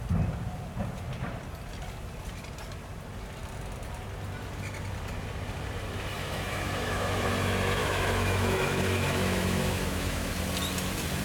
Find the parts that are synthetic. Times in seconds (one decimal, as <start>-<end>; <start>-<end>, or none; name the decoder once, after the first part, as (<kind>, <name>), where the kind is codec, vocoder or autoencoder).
6.2-7.3 (autoencoder, DAC-VAE); 7.8-10.3